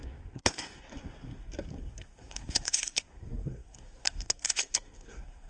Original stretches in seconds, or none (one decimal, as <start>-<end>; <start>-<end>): none